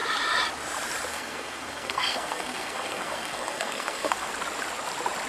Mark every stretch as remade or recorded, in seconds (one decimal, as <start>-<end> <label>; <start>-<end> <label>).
0.0-1.1 recorded; 1.1-4.3 remade; 4.3-5.3 recorded